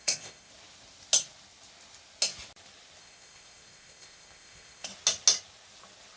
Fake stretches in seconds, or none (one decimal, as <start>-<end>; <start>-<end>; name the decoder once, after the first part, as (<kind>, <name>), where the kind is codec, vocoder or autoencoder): 0.0-0.5 (codec, ZipCodec); 3.0-4.9